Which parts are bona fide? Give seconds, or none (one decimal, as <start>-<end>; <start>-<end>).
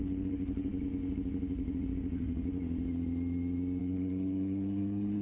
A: 0.7-3.8